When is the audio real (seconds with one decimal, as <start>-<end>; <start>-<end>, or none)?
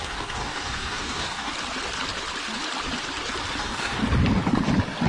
1.5-3.6; 4.0-5.1